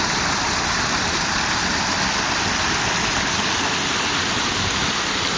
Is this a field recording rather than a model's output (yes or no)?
yes